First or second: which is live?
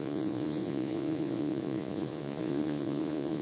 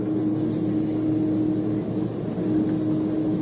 second